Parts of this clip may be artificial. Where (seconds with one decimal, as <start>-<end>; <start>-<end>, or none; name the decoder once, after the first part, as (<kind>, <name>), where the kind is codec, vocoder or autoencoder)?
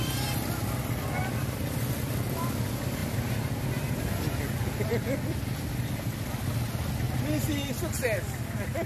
none